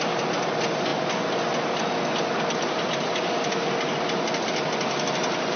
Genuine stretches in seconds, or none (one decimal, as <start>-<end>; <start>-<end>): 0.0-5.6

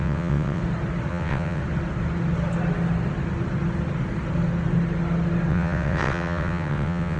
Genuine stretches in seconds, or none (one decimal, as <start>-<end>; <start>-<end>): 0.6-1.1; 1.6-5.5

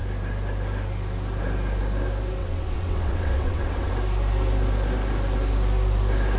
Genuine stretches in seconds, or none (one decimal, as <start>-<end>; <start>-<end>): 0.0-2.4; 3.9-6.4

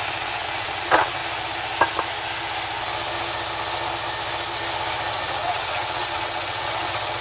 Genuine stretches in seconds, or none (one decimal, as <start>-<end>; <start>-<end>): 1.2-5.1

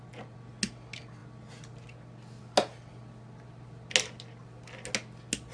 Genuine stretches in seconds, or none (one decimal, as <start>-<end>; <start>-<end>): 0.0-5.5

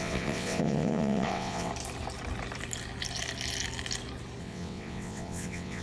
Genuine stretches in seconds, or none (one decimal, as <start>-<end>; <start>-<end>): 1.7-4.4

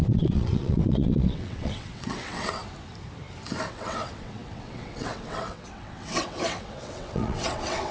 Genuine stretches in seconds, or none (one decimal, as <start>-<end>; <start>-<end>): 2.6-3.7

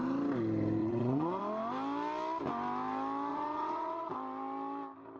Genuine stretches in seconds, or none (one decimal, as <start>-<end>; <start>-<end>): 0.0-0.8; 1.4-3.3; 4.1-5.2